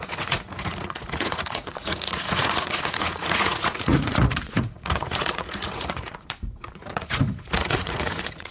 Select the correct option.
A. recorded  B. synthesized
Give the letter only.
B